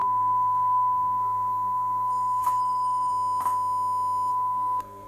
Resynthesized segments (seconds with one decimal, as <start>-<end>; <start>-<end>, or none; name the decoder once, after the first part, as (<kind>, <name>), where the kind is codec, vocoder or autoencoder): 0.0-3.1 (codec, SNAC); 4.3-5.1